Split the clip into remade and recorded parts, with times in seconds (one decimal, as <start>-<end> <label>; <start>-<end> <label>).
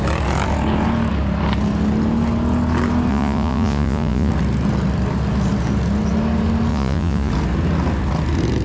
0.0-3.1 recorded; 3.1-4.3 remade; 4.3-6.7 recorded; 6.7-7.3 remade; 7.3-8.6 recorded